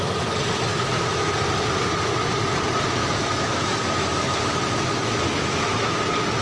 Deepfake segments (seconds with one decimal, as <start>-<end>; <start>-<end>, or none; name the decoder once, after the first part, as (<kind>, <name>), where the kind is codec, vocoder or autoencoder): 0.7-1.3 (autoencoder, DAC-VAE); 3.0-6.0